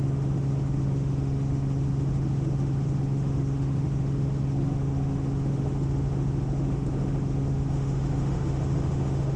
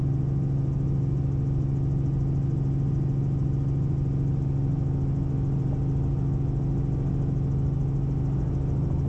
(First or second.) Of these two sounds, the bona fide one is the second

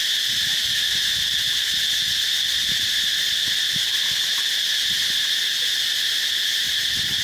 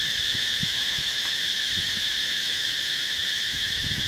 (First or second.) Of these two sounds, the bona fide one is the first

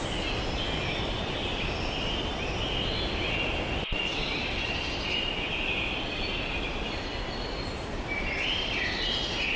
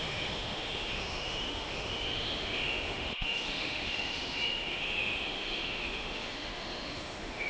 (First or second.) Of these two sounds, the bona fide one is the first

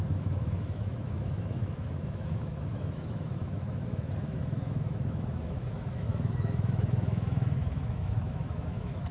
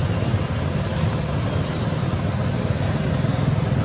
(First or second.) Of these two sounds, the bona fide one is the second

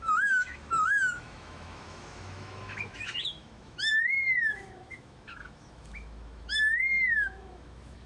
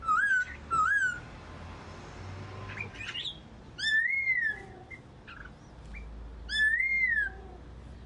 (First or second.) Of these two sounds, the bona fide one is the second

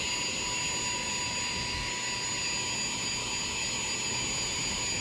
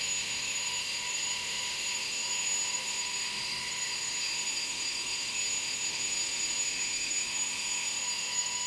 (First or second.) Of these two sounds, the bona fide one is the first